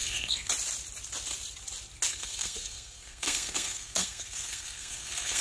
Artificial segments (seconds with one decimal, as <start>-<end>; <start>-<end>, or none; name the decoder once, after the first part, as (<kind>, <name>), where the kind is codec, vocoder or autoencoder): 0.0-0.5 (codec, SNAC); 2.1-5.4